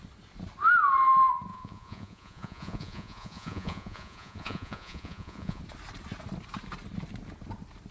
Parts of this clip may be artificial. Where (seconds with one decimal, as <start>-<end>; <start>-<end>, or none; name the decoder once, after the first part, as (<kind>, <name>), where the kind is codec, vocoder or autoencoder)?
1.5-5.6 (vocoder, Vocos)